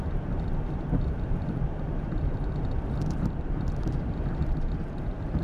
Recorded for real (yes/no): no